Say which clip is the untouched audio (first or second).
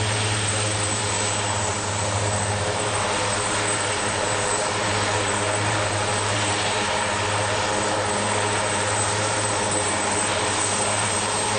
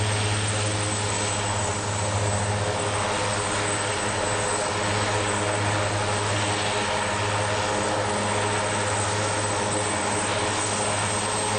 second